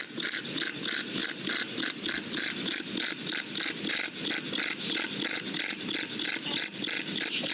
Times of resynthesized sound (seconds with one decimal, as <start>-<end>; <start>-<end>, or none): none